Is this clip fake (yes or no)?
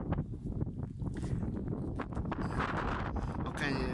no